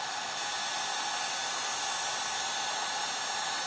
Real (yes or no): yes